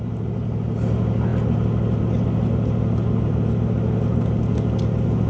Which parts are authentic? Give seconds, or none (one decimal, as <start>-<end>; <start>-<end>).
0.0-5.3